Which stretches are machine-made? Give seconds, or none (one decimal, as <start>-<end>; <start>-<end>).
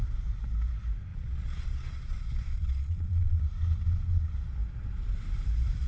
1.1-3.4